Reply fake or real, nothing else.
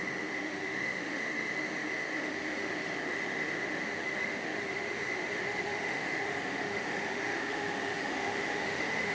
fake